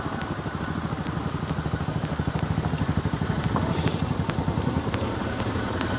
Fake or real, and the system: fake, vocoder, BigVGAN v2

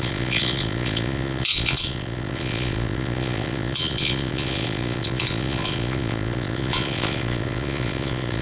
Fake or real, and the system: fake, vocoder, Vocos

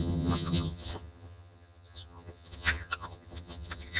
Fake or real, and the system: fake, vocoder, HiFi-GAN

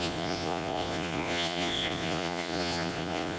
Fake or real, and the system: fake, vocoder, Vocos